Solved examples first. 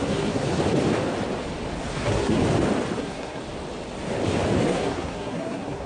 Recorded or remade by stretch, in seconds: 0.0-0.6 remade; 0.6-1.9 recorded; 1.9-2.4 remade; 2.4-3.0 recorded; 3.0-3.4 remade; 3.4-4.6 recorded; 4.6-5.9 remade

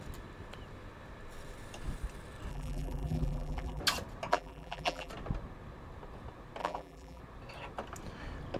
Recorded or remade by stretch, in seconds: 0.0-2.5 recorded; 2.5-3.8 remade; 3.8-4.3 recorded; 4.3-5.1 remade; 5.1-6.6 recorded; 6.6-7.2 remade; 7.2-8.6 recorded

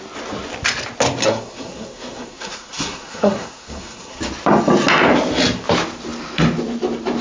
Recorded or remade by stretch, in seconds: 0.0-1.2 recorded; 1.2-4.2 remade; 4.2-7.2 recorded

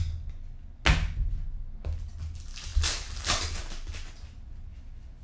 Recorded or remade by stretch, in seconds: 0.0-5.2 recorded

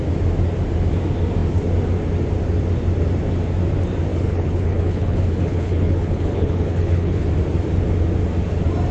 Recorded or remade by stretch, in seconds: 0.0-4.1 recorded; 4.1-7.3 remade; 7.3-8.9 recorded

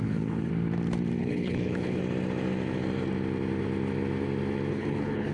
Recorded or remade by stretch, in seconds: 0.0-0.5 remade; 0.5-1.2 recorded; 1.2-2.0 remade; 2.0-4.7 recorded; 4.7-5.3 remade